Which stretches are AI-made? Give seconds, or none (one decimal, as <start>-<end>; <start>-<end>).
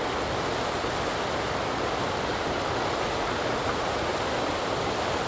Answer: 3.1-4.1